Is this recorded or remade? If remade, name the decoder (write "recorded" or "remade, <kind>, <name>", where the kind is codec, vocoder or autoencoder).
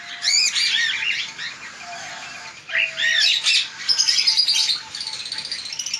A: recorded